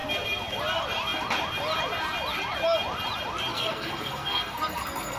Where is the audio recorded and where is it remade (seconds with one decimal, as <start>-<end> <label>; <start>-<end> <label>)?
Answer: 0.0-3.5 recorded; 3.5-5.2 remade